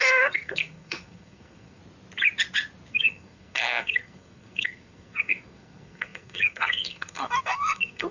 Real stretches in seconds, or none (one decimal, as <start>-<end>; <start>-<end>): 1.8-2.9